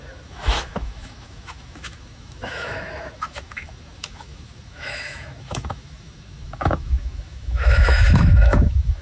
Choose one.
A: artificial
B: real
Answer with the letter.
A